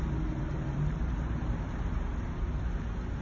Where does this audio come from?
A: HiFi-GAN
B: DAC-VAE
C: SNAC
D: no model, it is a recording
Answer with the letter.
D